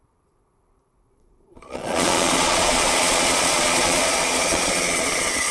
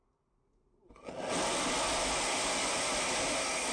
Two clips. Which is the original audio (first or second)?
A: second